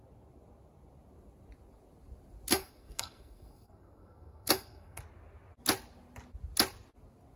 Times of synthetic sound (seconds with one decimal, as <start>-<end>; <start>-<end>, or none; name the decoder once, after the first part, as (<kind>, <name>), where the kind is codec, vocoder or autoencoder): 2.5-5.0 (codec, SNAC)